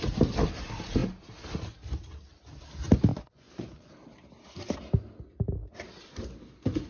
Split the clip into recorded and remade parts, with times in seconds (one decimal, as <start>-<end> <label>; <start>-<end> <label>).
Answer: 0.0-3.1 recorded; 3.1-3.9 remade; 3.9-6.9 recorded

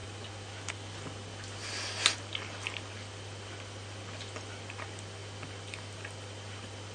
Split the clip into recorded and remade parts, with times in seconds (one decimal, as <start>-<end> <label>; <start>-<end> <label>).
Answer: 0.0-6.9 recorded

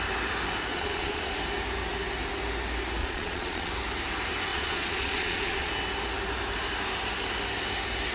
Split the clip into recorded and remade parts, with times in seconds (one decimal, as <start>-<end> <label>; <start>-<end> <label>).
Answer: 0.0-0.7 recorded; 0.7-1.3 remade; 1.3-3.0 recorded; 3.0-3.7 remade; 3.7-4.5 recorded; 4.5-5.7 remade; 5.7-8.1 recorded

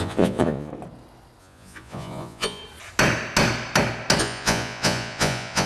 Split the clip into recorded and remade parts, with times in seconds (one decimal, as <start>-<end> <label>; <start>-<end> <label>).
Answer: 0.0-0.7 remade; 0.7-1.4 recorded; 1.4-2.6 remade; 2.6-4.2 recorded; 4.2-5.7 remade

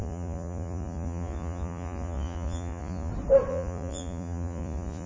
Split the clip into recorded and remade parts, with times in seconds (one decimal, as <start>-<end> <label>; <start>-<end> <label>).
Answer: 0.0-3.1 remade; 3.1-3.5 recorded; 3.5-5.1 remade